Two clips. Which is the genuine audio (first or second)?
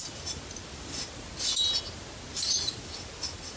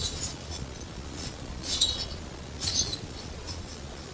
first